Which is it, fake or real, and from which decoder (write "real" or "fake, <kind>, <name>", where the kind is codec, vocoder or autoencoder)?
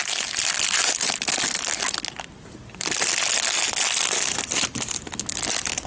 real